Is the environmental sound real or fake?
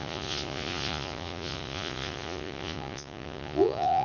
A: fake